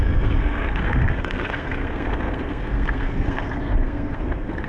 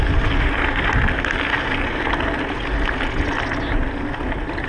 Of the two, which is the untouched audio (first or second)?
second